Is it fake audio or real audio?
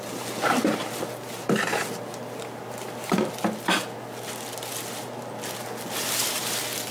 fake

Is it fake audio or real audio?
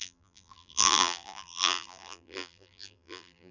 fake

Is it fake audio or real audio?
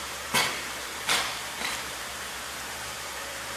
fake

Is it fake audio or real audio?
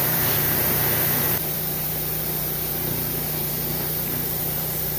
fake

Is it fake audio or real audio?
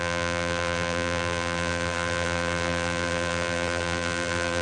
fake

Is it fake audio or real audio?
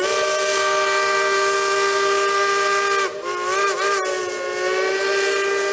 real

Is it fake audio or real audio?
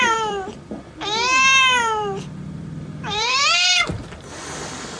fake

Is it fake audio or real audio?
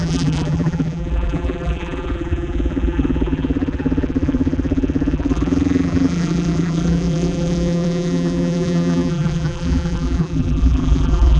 fake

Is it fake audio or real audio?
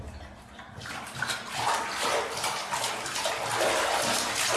real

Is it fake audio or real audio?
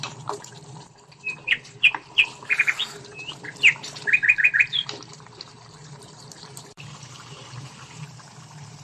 fake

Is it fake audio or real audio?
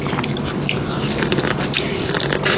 real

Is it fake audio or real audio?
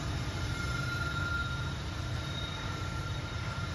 fake